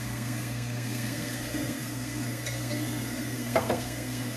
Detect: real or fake fake